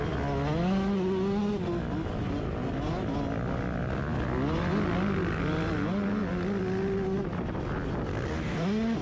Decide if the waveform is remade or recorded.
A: recorded